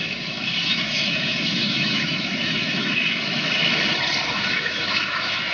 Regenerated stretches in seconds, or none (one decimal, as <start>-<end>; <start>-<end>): 0.0-3.7; 4.3-5.5